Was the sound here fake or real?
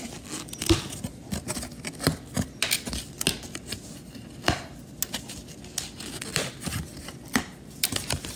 real